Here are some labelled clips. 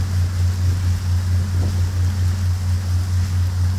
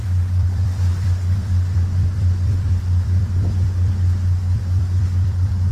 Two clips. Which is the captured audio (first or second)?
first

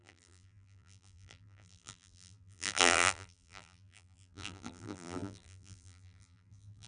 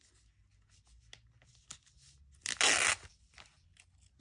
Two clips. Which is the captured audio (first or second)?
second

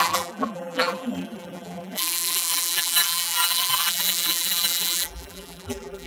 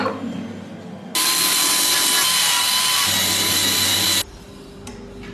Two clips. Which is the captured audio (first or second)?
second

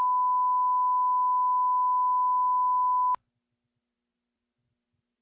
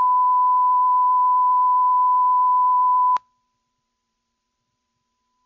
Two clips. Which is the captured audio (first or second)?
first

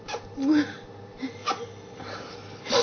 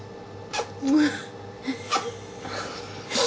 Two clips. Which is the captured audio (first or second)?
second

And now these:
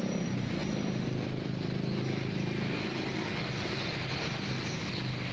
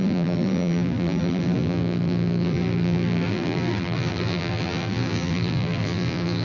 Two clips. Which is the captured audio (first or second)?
first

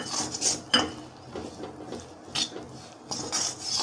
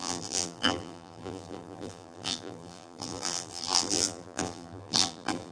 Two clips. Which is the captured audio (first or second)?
first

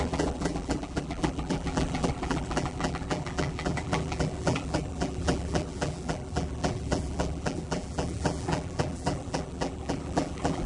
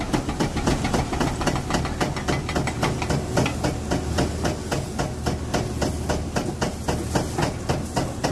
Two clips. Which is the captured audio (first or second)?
second